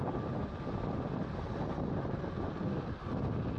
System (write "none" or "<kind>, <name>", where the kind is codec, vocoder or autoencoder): none